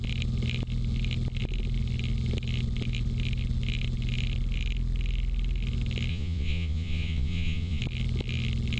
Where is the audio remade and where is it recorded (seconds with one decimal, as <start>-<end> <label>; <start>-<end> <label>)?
0.0-6.1 recorded; 6.1-7.8 remade; 7.8-8.8 recorded